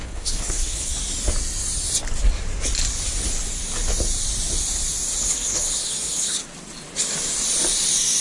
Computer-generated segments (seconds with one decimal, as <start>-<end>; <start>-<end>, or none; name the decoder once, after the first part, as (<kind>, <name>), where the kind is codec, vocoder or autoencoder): 0.0-0.9 (codec, HILCodec); 5.2-6.4